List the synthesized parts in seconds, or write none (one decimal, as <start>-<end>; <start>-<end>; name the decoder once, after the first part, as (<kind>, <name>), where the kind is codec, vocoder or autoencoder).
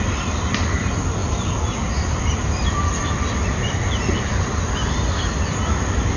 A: none